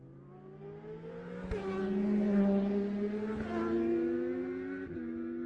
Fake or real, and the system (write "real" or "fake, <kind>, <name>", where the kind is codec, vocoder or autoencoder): real